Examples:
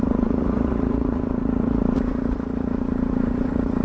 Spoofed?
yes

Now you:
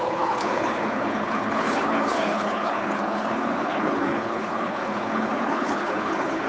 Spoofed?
yes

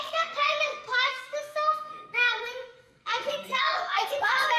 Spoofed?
yes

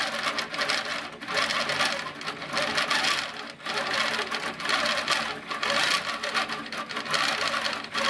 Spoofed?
no